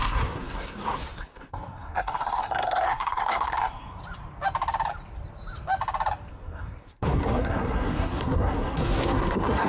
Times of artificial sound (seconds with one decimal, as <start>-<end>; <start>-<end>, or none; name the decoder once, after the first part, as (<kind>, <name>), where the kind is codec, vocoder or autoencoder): 0.0-4.0 (codec, SNAC); 6.3-9.7